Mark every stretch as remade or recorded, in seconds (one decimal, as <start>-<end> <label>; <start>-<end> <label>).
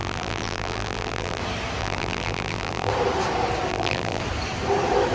0.0-1.4 remade; 1.4-1.8 recorded; 1.8-2.9 remade; 2.9-3.7 recorded; 3.7-4.2 remade; 4.2-5.1 recorded